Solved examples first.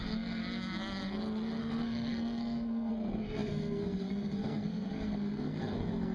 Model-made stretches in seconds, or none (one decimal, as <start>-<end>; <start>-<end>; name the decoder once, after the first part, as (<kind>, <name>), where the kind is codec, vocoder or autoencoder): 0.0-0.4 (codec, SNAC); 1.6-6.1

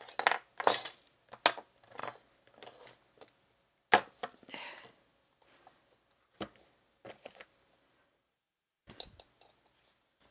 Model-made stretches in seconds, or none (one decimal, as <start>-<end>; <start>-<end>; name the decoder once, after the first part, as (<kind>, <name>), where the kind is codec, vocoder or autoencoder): 6.2-8.3 (vocoder, BigVGAN v2)

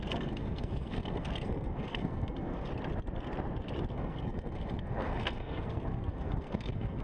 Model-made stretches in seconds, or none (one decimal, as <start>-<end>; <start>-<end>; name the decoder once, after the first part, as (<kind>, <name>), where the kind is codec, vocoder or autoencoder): 0.0-2.7 (codec, SNAC); 3.9-7.0

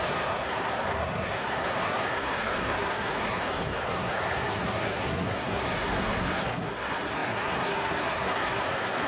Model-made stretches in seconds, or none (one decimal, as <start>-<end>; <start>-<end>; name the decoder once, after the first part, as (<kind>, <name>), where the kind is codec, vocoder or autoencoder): 0.0-9.1 (codec, SNAC)

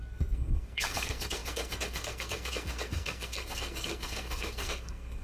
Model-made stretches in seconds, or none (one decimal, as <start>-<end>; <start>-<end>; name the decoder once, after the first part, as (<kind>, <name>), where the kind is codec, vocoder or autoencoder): 0.0-5.2 (codec, SNAC)

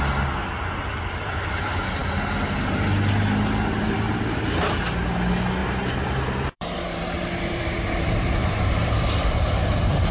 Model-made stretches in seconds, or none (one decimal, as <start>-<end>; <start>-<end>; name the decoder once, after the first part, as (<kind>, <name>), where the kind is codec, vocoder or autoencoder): 5.6-10.1 (vocoder, BigVGAN v2)